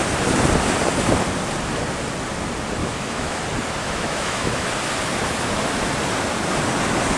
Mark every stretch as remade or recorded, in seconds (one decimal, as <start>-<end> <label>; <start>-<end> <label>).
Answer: 0.0-2.8 recorded; 2.8-3.4 remade; 3.4-3.8 recorded; 3.8-4.7 remade; 4.7-7.2 recorded

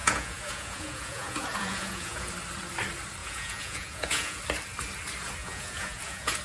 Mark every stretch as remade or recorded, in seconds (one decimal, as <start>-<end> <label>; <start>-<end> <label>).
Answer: 0.0-2.3 remade; 2.3-3.2 recorded; 3.2-4.4 remade; 4.4-5.4 recorded; 5.4-6.4 remade

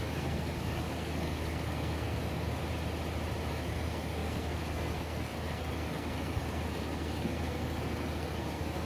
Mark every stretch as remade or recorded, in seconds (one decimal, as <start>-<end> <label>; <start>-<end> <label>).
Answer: 0.0-2.6 remade; 2.6-3.5 recorded; 3.5-8.9 remade

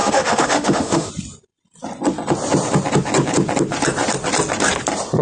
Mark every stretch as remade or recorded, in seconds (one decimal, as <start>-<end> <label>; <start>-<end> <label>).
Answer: 0.0-1.1 remade; 1.1-5.2 recorded

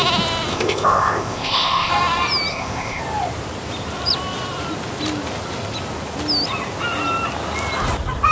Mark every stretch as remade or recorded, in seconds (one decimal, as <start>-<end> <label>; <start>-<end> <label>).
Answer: 0.0-0.5 recorded; 0.5-1.9 remade; 1.9-2.5 recorded; 2.5-3.0 remade; 3.0-8.3 recorded

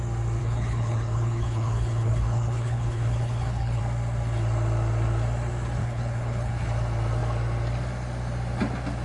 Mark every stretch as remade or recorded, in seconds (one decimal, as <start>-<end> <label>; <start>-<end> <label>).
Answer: 0.0-0.4 recorded; 0.4-3.8 remade; 3.8-5.8 recorded; 5.8-6.5 remade; 6.5-9.0 recorded

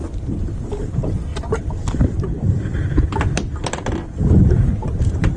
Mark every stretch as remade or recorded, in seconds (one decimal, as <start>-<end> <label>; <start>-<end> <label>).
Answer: 0.0-0.8 recorded; 0.8-1.3 remade; 1.3-4.5 recorded; 4.5-5.4 remade

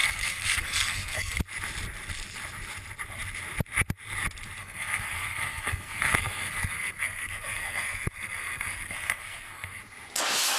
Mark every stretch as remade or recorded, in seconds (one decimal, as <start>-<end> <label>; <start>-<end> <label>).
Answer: 0.0-1.4 remade; 1.4-4.6 recorded; 4.6-9.8 remade; 9.8-10.6 recorded